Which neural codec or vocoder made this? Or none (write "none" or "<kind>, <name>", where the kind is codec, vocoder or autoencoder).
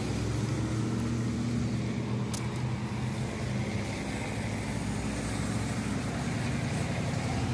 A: none